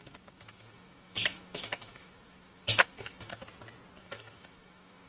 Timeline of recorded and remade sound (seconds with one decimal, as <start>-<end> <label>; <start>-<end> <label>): 0.0-3.4 remade; 3.4-4.0 recorded; 4.0-5.1 remade